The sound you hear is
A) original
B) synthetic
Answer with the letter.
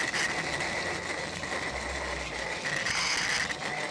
A